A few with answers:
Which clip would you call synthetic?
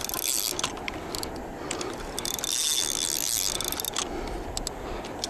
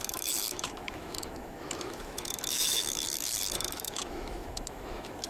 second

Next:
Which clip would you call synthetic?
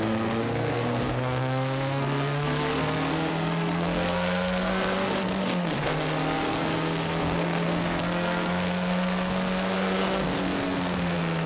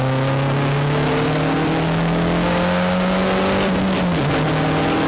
first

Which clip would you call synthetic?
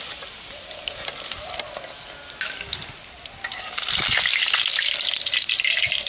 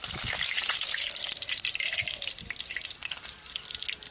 second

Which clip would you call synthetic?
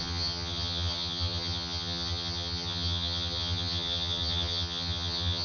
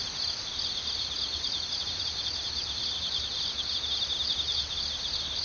first